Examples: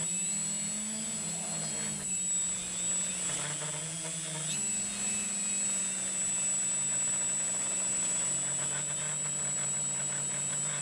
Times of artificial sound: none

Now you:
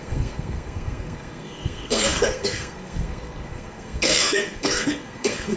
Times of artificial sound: 0.0-5.6 (codec, SNAC)